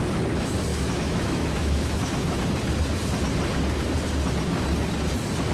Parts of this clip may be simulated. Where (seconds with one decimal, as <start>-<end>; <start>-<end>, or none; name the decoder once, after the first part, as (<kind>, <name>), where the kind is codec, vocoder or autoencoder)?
0.7-2.4 (autoencoder, DAC-VAE)